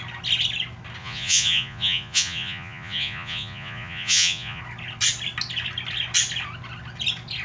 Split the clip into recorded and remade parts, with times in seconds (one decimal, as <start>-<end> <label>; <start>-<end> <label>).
0.0-1.0 recorded; 1.0-4.6 remade; 4.6-7.4 recorded